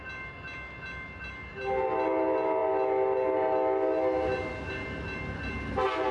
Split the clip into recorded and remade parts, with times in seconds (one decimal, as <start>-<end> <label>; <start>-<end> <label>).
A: 0.0-6.1 recorded